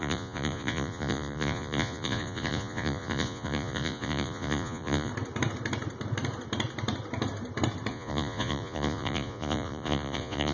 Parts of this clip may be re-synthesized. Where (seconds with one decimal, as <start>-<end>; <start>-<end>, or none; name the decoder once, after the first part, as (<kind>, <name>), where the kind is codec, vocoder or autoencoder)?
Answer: 0.0-5.1 (vocoder, Vocos); 7.9-10.5